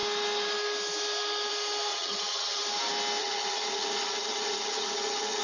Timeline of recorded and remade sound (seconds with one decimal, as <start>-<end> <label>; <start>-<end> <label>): 0.0-1.9 recorded; 1.9-2.6 remade; 2.6-3.2 recorded; 3.2-5.4 remade